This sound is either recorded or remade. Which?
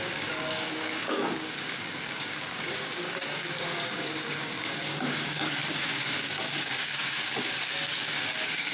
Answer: remade